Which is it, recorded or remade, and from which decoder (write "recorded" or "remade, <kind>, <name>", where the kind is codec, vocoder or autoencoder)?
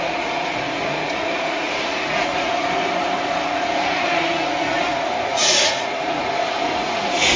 remade, vocoder, Vocos